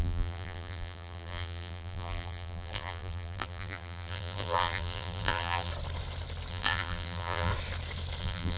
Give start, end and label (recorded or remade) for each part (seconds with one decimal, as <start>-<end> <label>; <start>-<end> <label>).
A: 0.0-5.7 remade; 5.7-6.5 recorded; 6.5-7.5 remade; 7.5-8.2 recorded; 8.2-8.6 remade